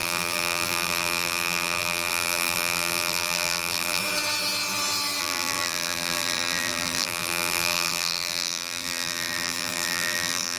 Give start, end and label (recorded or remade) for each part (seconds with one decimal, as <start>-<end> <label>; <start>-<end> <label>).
0.0-4.0 remade; 4.0-5.2 recorded; 5.2-10.6 remade